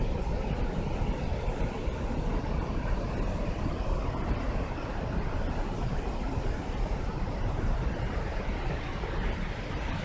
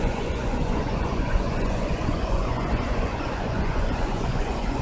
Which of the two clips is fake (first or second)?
second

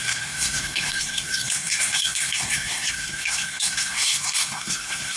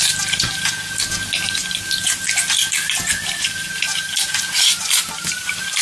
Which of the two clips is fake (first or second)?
first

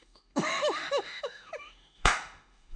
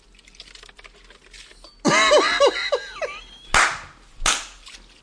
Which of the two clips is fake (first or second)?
first